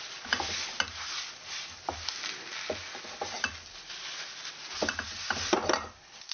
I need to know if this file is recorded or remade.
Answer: recorded